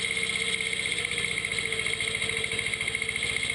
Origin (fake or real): real